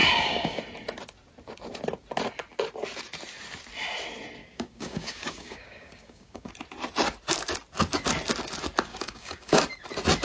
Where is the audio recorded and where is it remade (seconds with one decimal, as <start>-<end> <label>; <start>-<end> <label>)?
0.0-0.6 remade; 0.6-4.4 recorded; 4.4-6.5 remade; 6.5-8.9 recorded; 8.9-9.6 remade; 9.6-10.2 recorded